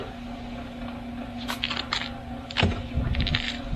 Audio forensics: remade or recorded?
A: recorded